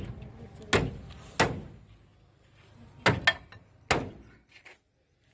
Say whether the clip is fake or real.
real